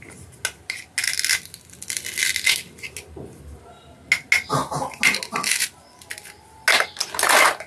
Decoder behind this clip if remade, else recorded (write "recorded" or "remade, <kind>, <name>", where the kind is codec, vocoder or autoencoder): recorded